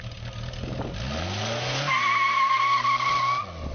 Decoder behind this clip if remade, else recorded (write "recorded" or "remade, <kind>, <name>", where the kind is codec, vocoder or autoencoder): recorded